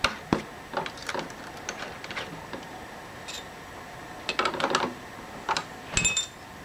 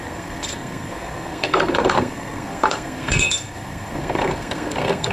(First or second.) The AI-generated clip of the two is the second